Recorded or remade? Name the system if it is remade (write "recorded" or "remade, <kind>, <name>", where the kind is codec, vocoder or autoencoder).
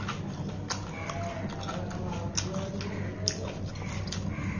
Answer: recorded